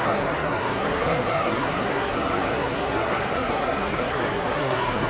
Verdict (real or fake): fake